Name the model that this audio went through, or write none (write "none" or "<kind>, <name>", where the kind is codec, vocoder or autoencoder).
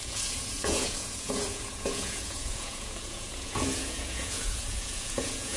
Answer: vocoder, Vocos